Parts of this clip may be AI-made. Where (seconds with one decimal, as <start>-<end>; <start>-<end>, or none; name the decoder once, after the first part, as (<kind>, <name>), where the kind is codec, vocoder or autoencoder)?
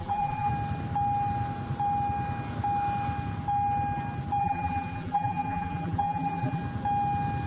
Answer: 0.0-0.5 (vocoder, BigVGAN v2); 4.4-6.6